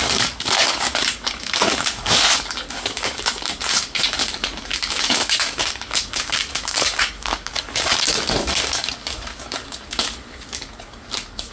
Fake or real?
fake